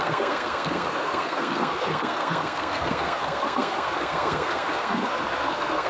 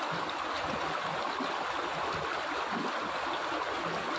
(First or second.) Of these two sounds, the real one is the second